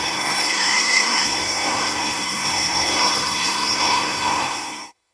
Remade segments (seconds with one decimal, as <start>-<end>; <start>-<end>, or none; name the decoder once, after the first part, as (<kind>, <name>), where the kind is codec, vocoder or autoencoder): 0.0-5.1 (codec, SNAC)